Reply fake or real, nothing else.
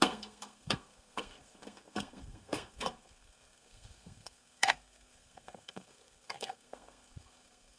fake